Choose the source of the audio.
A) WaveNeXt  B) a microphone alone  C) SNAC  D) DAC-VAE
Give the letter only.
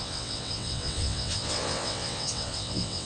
A